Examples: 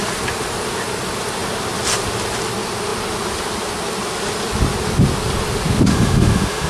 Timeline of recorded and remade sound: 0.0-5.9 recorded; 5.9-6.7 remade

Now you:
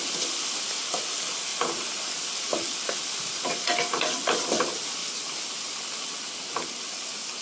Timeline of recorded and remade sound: 0.0-7.4 recorded